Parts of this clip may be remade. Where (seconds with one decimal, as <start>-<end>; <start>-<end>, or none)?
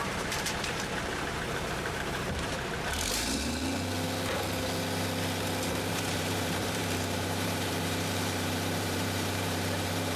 0.0-3.6; 5.9-10.2